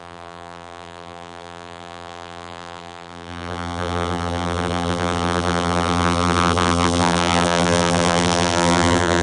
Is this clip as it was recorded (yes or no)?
no